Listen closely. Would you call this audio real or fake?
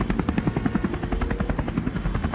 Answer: real